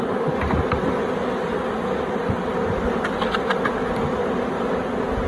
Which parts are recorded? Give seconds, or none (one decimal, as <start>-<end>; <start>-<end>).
0.0-5.3